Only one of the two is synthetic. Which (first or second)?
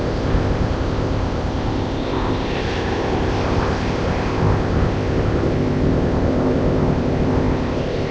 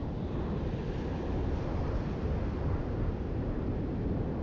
first